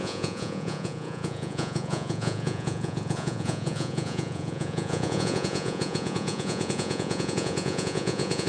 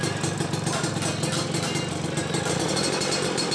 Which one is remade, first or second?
first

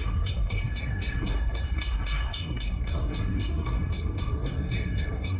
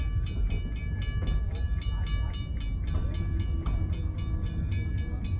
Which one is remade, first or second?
first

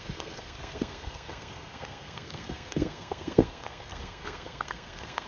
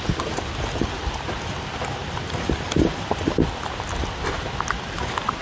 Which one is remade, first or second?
first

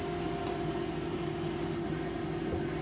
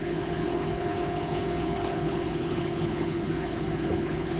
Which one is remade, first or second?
second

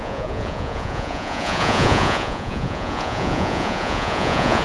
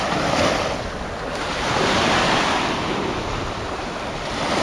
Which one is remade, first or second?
first